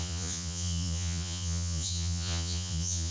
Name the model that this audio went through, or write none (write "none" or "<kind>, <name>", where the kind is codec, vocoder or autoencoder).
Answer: vocoder, Vocos